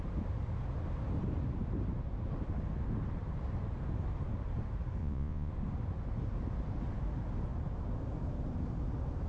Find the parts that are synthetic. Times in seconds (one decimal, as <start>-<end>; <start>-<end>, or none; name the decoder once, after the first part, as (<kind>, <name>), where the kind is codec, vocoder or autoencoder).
5.0-5.5 (vocoder, Vocos)